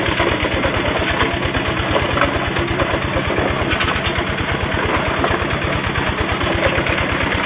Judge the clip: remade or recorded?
recorded